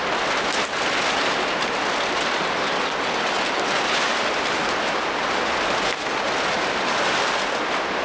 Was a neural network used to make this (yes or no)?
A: no